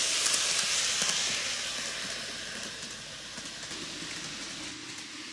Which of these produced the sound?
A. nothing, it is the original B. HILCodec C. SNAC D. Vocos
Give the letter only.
A